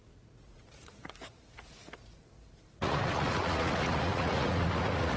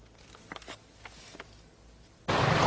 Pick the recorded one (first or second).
second